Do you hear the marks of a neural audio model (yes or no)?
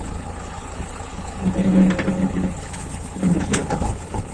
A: yes